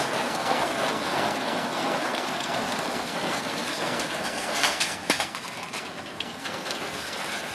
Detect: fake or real fake